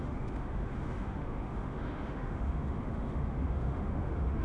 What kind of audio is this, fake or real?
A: fake